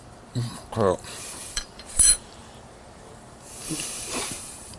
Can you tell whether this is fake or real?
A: fake